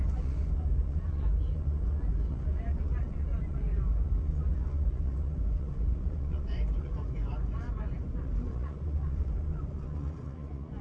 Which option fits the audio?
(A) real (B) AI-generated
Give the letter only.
B